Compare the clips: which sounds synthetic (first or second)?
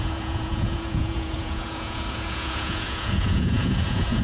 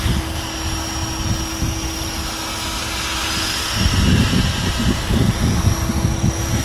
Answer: first